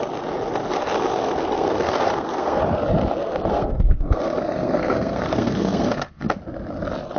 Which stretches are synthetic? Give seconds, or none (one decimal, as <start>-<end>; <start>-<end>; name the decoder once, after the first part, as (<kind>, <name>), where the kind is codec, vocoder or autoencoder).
1.1-2.6 (codec, SNAC); 3.2-6.4